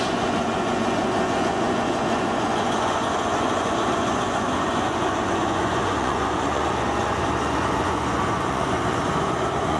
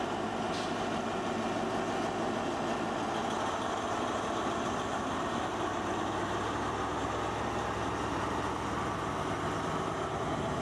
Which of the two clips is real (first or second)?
second